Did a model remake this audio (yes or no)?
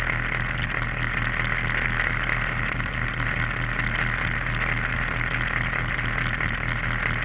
no